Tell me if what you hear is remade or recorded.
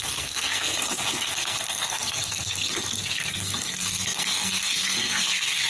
remade